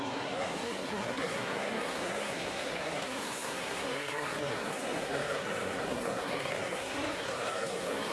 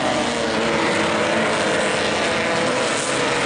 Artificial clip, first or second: first